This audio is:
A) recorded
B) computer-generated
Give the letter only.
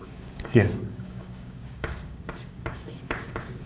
B